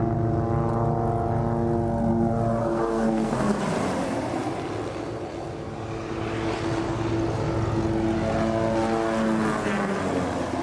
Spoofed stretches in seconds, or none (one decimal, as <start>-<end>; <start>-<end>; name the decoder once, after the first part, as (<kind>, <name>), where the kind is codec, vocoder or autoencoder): 2.6-3.6 (codec, SNAC)